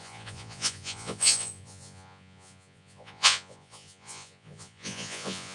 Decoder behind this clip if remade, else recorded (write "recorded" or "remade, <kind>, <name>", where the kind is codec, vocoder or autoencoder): remade, vocoder, Vocos